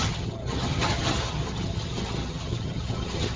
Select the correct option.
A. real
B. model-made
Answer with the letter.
B